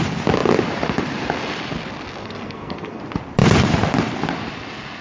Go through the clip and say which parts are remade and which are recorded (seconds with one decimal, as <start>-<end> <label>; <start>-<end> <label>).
0.0-2.2 recorded; 2.2-3.0 remade; 3.0-5.0 recorded